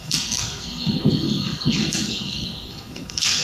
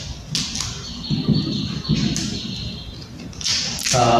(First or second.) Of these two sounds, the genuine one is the second